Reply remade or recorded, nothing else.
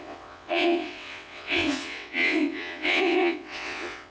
remade